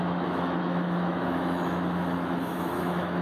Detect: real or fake fake